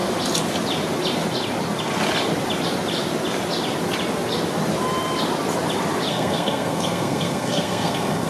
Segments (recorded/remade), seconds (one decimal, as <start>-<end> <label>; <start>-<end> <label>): 0.0-6.1 recorded; 6.1-8.3 remade